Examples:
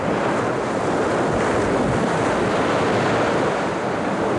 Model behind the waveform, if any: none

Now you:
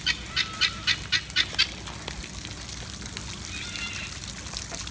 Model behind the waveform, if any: none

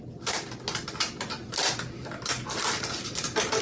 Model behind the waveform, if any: none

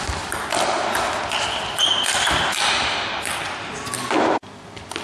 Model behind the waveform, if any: none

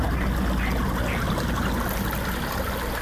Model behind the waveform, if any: none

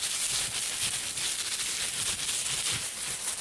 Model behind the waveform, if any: none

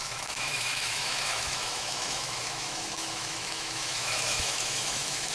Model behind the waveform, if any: autoencoder, DAC-VAE